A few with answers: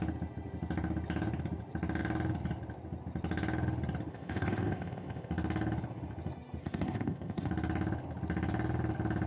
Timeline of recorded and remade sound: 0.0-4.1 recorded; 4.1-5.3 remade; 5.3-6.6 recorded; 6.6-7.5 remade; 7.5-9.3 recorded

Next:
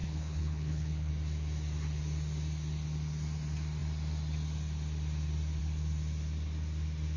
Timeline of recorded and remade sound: 0.0-1.1 remade; 1.1-7.2 recorded

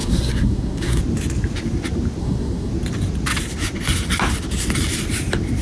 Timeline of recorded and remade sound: 0.0-1.0 remade; 1.0-2.2 recorded; 2.2-2.7 remade; 2.7-5.6 recorded

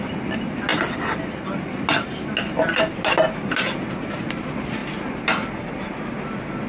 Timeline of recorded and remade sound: 0.0-6.7 recorded